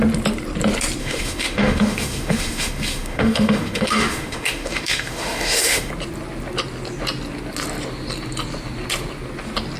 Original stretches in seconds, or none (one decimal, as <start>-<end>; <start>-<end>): 0.0-1.0; 5.9-9.8